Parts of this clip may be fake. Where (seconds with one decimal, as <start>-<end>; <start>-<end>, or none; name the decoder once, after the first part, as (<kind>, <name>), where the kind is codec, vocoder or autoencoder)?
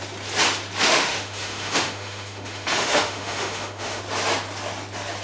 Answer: 0.9-4.0 (autoencoder, DAC-VAE)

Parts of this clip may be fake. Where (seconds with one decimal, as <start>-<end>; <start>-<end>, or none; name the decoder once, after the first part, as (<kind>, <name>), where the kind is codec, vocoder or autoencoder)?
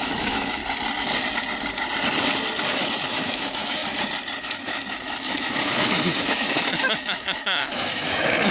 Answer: 0.0-0.6 (autoencoder, DAC-VAE); 2.7-3.8; 4.4-8.5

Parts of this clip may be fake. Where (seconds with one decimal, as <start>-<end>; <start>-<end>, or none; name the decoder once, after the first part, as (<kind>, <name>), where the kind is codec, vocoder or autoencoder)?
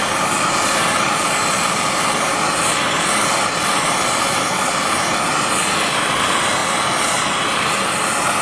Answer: none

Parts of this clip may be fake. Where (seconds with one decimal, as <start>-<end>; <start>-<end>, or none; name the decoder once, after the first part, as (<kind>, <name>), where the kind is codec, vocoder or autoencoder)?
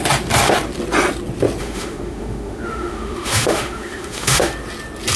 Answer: 1.6-4.5 (autoencoder, DAC-VAE)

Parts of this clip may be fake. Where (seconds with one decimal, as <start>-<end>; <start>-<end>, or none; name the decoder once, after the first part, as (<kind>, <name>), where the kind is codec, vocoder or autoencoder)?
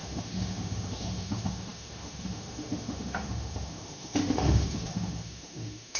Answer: 0.0-6.0 (autoencoder, DAC-VAE)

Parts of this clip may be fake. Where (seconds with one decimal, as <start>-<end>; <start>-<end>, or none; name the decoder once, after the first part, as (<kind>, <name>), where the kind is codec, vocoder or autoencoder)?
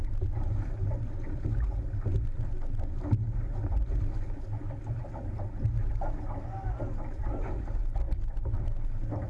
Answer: none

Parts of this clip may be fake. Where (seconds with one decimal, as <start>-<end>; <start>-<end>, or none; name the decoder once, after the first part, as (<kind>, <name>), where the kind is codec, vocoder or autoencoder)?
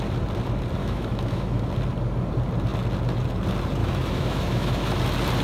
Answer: 0.8-1.6 (autoencoder, DAC-VAE); 3.8-4.9